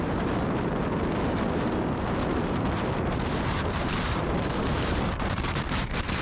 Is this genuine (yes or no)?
no